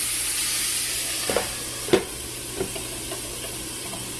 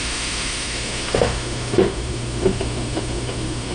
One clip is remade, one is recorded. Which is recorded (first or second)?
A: first